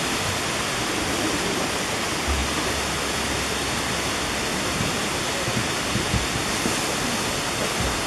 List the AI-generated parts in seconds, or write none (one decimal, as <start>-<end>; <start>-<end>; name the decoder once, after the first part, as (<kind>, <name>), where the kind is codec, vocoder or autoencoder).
none

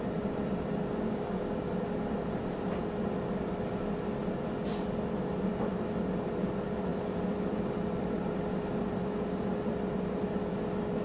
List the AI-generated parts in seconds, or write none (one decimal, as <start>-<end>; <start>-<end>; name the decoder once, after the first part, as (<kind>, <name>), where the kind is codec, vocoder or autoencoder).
0.9-1.7 (codec, DAC)

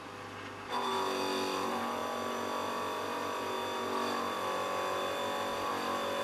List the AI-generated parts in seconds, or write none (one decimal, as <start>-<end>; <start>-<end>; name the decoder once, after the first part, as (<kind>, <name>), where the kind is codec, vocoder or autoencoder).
none

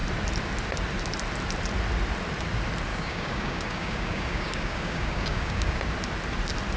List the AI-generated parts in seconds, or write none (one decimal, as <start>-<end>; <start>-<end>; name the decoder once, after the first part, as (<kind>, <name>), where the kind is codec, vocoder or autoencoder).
2.9-5.8 (codec, DAC)

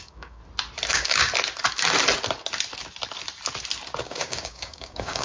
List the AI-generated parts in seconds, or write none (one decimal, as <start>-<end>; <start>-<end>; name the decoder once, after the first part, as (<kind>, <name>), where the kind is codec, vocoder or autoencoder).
0.0-0.4 (codec, DAC); 0.9-1.3; 4.0-5.2

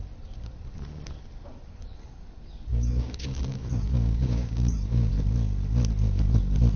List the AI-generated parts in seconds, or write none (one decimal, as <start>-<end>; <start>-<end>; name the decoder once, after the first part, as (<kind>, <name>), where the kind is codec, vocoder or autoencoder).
2.7-5.1 (codec, DAC)

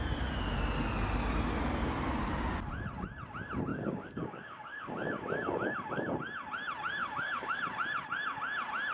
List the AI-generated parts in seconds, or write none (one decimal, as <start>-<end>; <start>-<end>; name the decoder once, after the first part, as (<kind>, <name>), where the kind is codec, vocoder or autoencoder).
3.7-6.1 (codec, DAC); 7.0-7.6